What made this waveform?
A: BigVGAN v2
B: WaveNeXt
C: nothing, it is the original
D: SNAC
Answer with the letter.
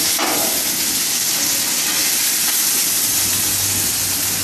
C